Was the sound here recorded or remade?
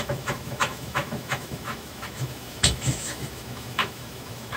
remade